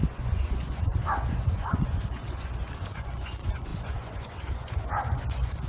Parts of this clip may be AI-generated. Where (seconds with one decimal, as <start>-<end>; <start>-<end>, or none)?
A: 0.0-5.7